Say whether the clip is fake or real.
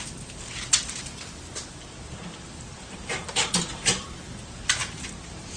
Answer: fake